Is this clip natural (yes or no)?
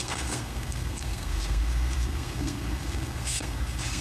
no